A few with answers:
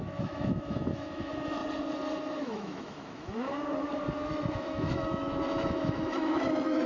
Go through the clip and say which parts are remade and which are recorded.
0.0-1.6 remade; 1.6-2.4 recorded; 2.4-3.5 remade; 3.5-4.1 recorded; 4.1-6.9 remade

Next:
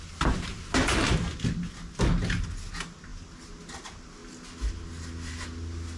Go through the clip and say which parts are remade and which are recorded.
0.0-6.0 recorded

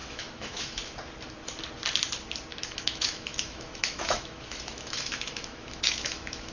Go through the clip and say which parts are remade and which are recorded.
0.0-0.8 remade; 0.8-2.5 recorded; 2.5-6.5 remade

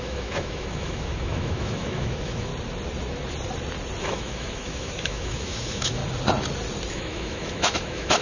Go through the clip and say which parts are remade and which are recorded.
0.0-2.5 remade; 2.5-4.0 recorded; 4.0-6.0 remade; 6.0-6.9 recorded; 6.9-8.2 remade

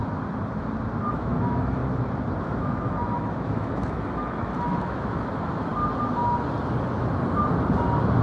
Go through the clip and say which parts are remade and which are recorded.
0.0-1.1 recorded; 1.1-1.8 remade; 1.8-2.4 recorded; 2.4-5.7 remade; 5.7-8.2 recorded